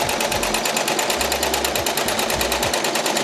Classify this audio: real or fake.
real